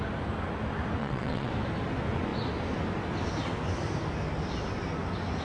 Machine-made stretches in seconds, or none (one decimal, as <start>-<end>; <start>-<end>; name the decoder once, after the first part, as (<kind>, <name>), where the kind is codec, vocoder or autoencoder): 1.0-1.5 (vocoder, WaveNeXt)